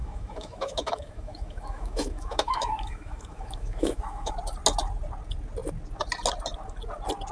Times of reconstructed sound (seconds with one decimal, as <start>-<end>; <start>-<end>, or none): 0.0-4.3